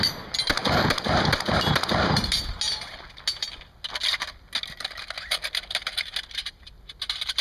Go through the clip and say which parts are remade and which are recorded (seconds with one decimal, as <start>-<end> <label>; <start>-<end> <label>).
0.0-7.4 recorded